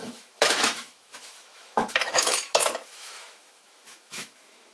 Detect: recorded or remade remade